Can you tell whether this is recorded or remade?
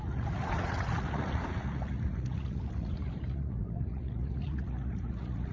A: remade